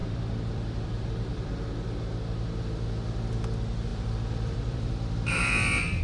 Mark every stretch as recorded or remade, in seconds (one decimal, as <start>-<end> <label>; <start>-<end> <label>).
0.0-1.5 remade; 1.5-3.9 recorded; 3.9-6.0 remade